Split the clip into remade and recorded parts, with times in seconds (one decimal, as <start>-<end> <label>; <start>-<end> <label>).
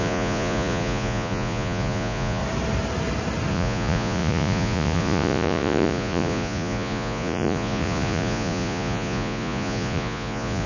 0.0-2.4 remade; 2.4-3.5 recorded; 3.5-10.7 remade